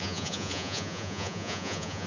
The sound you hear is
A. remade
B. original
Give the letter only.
A